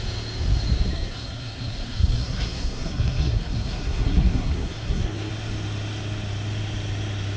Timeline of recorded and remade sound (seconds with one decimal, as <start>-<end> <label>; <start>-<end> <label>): 0.0-0.9 recorded; 0.9-5.3 remade; 5.3-7.4 recorded